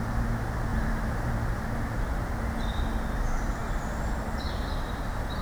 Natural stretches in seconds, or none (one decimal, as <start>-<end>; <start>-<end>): 0.0-0.7; 1.3-5.4